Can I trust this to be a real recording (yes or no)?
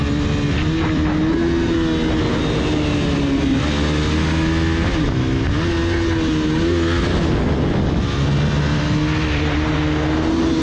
yes